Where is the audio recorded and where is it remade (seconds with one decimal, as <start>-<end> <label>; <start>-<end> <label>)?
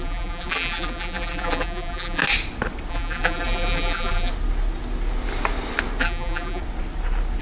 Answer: 0.0-2.2 remade; 2.2-2.9 recorded; 2.9-4.3 remade; 4.3-6.0 recorded; 6.0-6.6 remade; 6.6-7.4 recorded